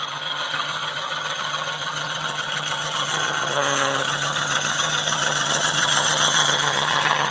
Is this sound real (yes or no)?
no